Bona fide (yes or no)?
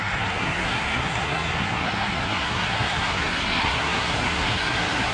no